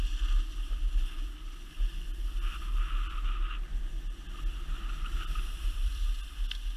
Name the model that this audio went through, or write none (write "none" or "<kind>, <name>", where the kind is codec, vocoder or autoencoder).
none